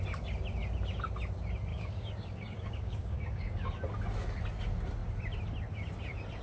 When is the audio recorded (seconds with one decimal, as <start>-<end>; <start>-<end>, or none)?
0.0-1.7; 3.7-6.4